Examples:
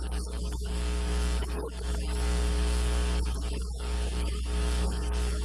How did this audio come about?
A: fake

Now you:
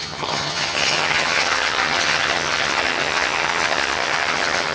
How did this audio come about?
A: fake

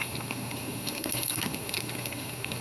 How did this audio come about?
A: fake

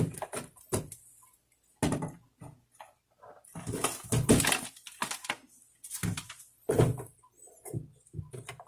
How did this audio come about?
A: real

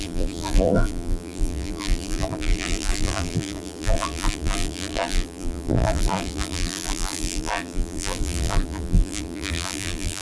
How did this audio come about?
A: fake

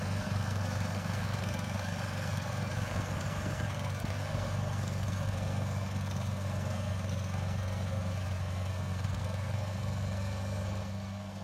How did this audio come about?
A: fake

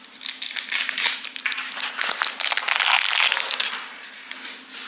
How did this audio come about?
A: real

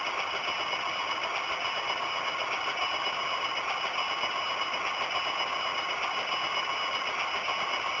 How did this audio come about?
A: real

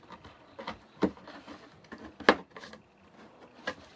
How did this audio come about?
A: real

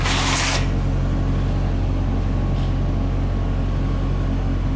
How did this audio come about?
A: real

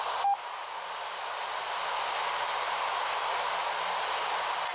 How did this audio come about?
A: real